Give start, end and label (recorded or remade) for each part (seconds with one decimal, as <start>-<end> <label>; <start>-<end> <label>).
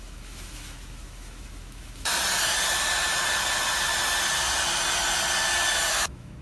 0.0-2.1 remade; 2.1-5.9 recorded; 5.9-6.4 remade